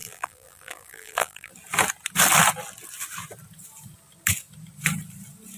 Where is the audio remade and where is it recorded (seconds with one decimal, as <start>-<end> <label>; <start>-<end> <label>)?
0.0-1.5 remade; 1.5-5.6 recorded